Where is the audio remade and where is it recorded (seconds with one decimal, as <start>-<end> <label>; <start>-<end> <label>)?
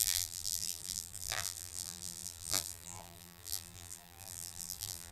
0.0-5.1 remade